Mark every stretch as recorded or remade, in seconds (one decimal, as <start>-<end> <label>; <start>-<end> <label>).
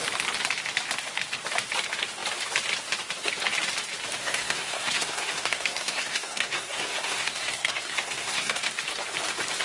0.0-4.2 recorded; 4.2-8.7 remade; 8.7-9.6 recorded